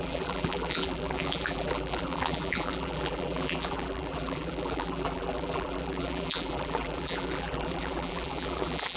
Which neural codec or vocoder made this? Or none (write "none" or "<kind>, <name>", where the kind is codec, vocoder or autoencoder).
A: vocoder, BigVGAN v2